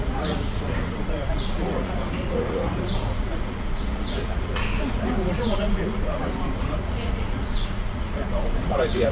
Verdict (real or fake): fake